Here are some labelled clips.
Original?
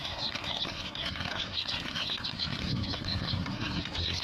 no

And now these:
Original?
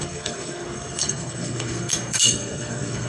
no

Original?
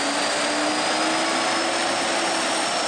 yes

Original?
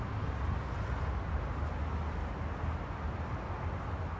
yes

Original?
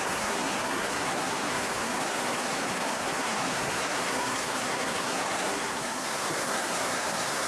no